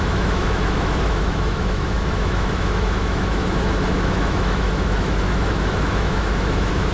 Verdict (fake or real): fake